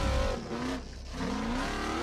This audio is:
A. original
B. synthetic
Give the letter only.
A